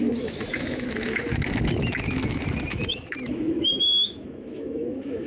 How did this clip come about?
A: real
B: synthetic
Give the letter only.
B